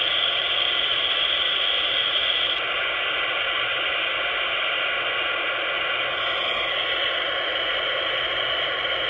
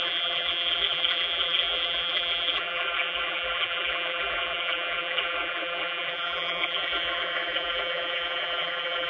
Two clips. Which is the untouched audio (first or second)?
first